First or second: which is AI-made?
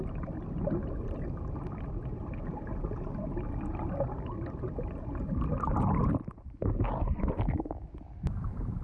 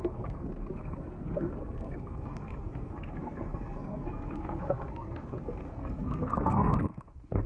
second